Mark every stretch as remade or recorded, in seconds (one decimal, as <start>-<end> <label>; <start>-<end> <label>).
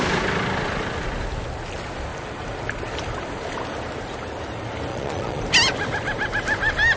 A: 0.0-4.9 recorded; 4.9-5.4 remade; 5.4-7.0 recorded